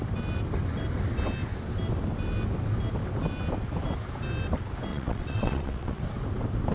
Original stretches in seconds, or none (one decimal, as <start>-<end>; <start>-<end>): 0.0-4.9; 6.0-6.7